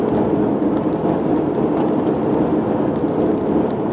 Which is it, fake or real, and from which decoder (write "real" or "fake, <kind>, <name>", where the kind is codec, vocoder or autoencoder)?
real